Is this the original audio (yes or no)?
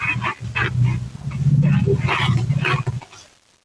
yes